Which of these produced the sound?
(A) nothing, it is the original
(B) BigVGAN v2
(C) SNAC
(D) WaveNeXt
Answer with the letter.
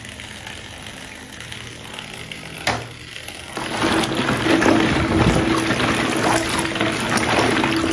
A